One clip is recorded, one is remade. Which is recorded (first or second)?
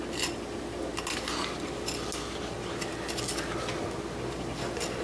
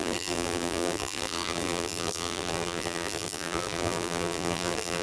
first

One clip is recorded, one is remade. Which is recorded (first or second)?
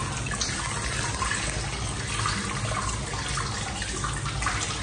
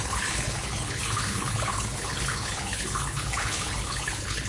first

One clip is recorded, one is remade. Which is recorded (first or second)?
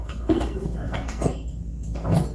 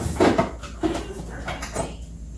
second